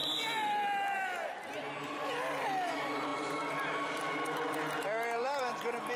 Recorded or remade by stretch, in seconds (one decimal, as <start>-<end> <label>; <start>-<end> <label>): 0.0-6.0 recorded